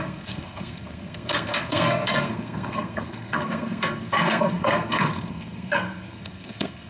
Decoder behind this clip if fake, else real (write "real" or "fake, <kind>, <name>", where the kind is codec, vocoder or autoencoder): fake, codec, SNAC